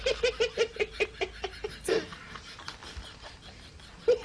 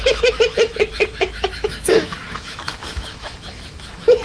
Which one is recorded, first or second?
first